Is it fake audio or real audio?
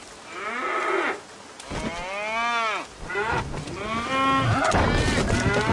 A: real